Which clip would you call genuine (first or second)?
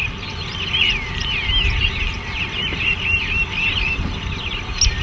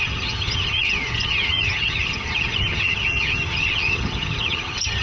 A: first